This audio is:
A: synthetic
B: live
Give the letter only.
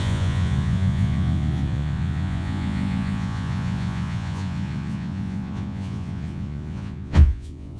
A